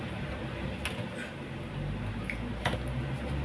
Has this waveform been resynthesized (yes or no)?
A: no